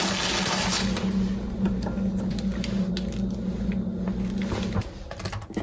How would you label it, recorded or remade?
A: recorded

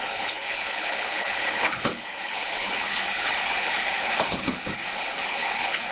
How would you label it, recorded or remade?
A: remade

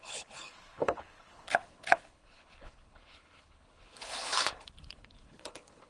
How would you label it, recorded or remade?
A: remade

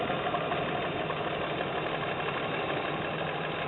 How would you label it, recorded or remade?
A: recorded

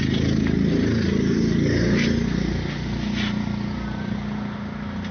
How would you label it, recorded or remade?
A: recorded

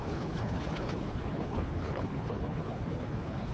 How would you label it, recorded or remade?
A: remade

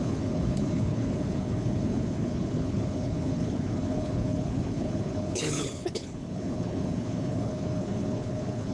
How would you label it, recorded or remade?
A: remade